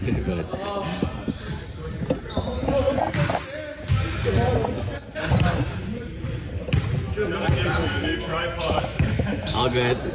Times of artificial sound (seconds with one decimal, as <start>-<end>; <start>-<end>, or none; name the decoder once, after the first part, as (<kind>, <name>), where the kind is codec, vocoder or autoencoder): 7.8-9.6 (autoencoder, DAC-VAE)